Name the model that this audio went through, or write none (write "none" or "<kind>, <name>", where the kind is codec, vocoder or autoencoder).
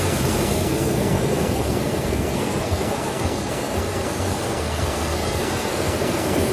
codec, SNAC